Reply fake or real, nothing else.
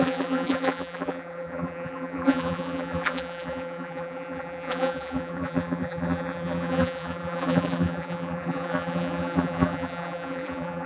fake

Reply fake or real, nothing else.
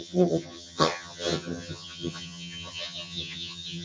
fake